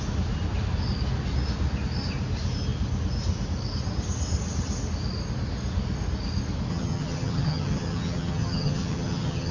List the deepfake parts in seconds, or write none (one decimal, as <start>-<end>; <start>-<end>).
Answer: 6.7-9.5